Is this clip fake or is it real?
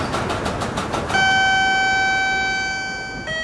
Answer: real